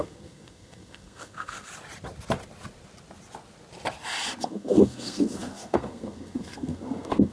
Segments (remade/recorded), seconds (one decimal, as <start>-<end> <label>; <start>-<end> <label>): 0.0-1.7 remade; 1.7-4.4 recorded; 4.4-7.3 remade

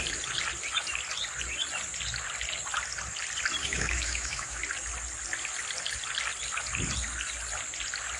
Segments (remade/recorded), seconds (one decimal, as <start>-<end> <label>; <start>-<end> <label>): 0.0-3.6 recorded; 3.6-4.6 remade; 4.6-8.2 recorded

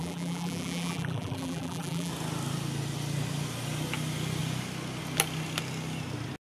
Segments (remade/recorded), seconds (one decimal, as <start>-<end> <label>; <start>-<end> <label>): 0.0-2.1 remade; 2.1-6.4 recorded

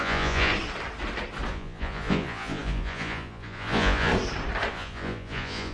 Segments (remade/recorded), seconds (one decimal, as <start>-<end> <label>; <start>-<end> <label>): 0.0-0.5 remade; 0.5-1.5 recorded; 1.5-4.1 remade; 4.1-4.7 recorded; 4.7-5.7 remade

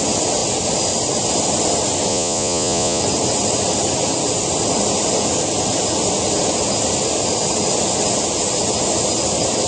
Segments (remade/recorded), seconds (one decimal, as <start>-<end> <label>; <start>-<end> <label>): 0.0-2.1 recorded; 2.1-3.0 remade; 3.0-9.7 recorded